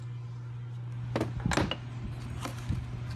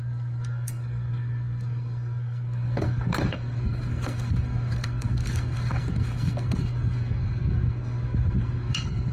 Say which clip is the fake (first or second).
second